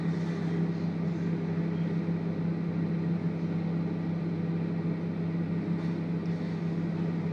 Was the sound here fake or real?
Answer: real